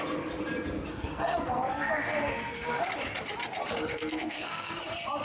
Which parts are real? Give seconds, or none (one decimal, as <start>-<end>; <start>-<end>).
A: 0.0-0.9; 2.8-3.9; 4.8-5.2